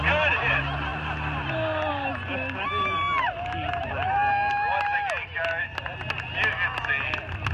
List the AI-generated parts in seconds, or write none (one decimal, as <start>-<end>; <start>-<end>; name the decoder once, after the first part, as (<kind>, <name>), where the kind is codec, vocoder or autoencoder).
none